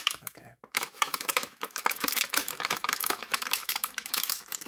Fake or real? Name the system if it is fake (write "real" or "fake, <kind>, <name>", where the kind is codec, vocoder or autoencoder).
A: fake, autoencoder, DAC-VAE